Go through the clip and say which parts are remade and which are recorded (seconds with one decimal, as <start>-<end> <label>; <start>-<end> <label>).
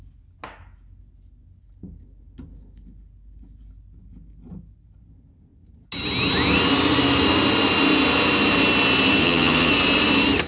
0.0-9.2 recorded; 9.2-9.7 remade; 9.7-10.5 recorded